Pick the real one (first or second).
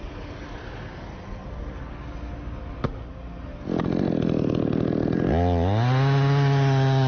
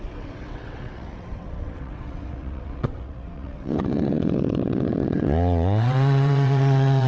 first